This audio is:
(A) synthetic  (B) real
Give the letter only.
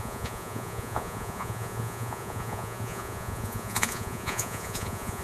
A